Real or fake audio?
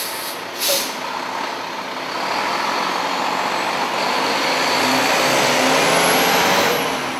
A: real